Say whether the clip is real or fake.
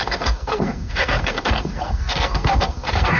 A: fake